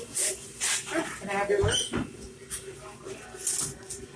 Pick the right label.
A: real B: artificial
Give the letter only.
A